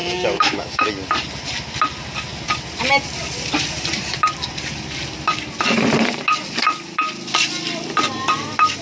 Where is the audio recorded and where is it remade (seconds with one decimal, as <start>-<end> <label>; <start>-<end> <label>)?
0.0-0.9 remade; 0.9-8.8 recorded